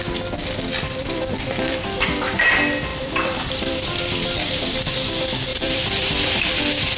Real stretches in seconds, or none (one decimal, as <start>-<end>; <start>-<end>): 0.0-1.0; 2.4-2.9; 4.9-5.5; 6.6-7.0